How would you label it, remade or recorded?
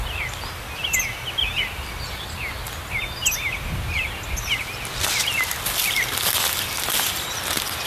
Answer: recorded